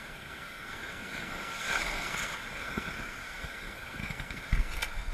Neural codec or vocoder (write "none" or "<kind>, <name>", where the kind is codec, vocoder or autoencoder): codec, SNAC